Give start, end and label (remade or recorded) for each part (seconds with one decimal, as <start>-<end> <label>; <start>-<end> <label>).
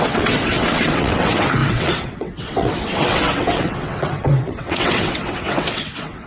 0.0-6.3 remade